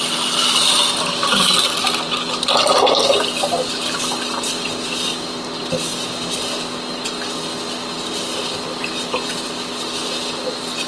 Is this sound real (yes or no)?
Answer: yes